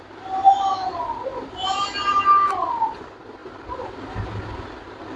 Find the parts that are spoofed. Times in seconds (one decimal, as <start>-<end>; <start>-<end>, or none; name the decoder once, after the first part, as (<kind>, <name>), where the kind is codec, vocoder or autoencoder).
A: none